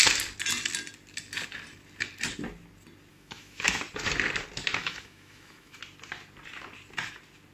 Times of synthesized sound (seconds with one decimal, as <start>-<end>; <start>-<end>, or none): 3.1-3.8; 4.8-5.8